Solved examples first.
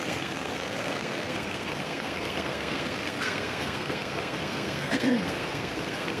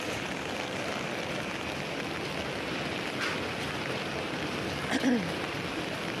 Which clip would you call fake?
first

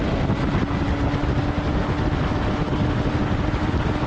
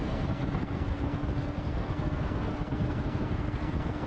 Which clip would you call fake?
second